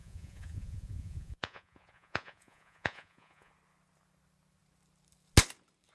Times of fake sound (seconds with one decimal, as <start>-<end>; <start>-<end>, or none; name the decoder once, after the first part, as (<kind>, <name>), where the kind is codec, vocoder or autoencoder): 0.0-3.5 (vocoder, Vocos)